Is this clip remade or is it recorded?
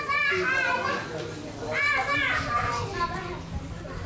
recorded